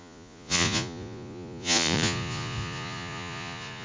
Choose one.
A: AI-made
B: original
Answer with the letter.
A